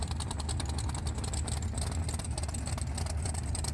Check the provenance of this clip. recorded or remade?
recorded